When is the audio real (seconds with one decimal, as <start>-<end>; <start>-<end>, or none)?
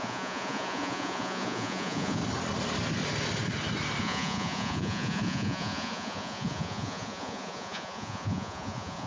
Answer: 2.2-4.0